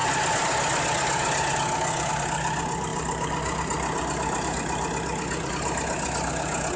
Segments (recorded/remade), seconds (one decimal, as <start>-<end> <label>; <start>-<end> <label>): 0.0-6.8 recorded